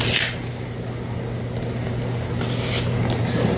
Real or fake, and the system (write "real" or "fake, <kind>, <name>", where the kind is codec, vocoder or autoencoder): real